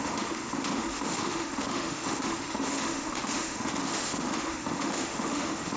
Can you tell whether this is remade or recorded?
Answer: remade